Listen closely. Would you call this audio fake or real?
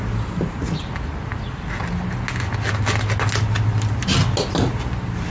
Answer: real